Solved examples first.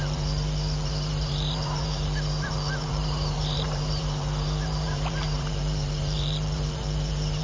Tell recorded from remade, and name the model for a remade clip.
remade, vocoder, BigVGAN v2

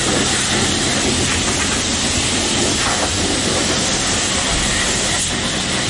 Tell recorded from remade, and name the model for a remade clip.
recorded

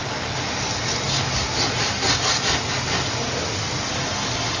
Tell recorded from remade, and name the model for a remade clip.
recorded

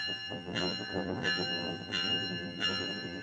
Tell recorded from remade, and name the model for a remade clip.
remade, vocoder, BigVGAN v2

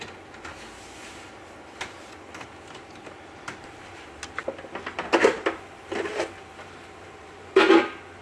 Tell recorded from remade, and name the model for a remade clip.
recorded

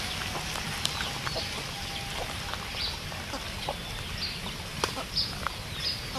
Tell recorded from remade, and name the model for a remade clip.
recorded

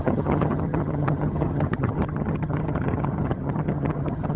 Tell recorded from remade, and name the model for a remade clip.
remade, vocoder, HiFi-GAN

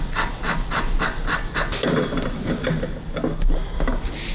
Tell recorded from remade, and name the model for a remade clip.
recorded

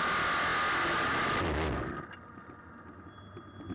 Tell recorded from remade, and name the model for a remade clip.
recorded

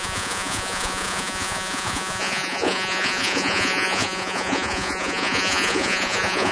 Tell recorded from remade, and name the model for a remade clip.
remade, vocoder, Vocos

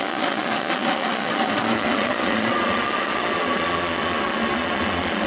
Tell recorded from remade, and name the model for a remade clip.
remade, vocoder, Vocos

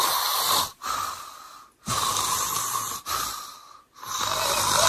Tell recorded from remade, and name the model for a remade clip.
recorded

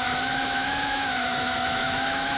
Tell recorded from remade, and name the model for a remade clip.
remade, autoencoder, DAC-VAE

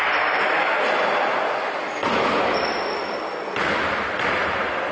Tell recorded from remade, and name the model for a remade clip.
recorded